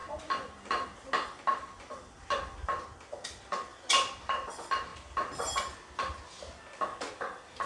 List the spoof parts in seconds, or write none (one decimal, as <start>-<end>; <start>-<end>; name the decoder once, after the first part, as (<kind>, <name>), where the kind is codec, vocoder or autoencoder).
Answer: 3.7-4.5 (vocoder, BigVGAN v2)